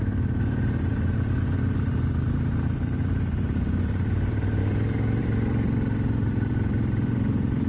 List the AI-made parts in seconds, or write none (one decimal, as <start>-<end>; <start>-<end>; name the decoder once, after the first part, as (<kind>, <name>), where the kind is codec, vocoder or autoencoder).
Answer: 0.0-4.6 (vocoder, BigVGAN v2); 5.2-7.7